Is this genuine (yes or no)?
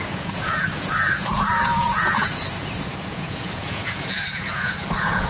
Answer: no